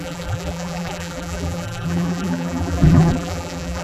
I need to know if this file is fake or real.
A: fake